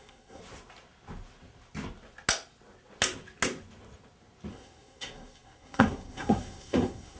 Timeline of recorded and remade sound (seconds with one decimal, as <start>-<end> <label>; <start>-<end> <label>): 0.0-0.4 remade; 0.4-4.5 recorded; 4.5-7.2 remade